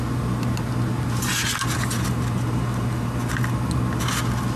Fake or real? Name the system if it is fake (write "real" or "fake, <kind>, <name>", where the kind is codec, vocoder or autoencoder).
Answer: real